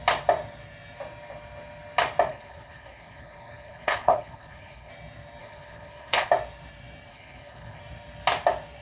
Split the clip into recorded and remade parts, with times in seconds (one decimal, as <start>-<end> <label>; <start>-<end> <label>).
0.0-2.3 recorded; 2.3-4.9 remade; 4.9-5.4 recorded; 5.4-6.3 remade; 6.3-7.1 recorded; 7.1-7.8 remade; 7.8-8.8 recorded